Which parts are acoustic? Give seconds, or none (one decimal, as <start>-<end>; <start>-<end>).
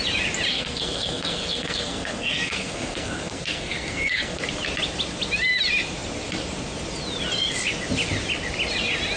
0.0-0.5; 4.4-9.2